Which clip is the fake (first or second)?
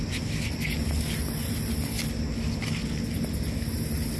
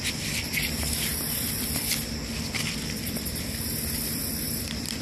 second